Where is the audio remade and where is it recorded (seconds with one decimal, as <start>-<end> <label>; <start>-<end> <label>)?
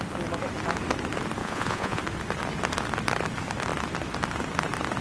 0.0-1.4 recorded; 1.4-2.0 remade; 2.0-5.0 recorded